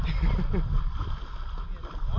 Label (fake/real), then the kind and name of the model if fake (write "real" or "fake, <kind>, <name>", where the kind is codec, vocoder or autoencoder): real